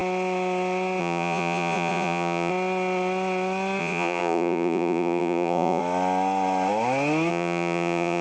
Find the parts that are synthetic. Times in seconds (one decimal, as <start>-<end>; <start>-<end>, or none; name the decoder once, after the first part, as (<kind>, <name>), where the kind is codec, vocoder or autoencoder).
1.0-2.5 (vocoder, Vocos); 3.8-5.8; 7.3-8.2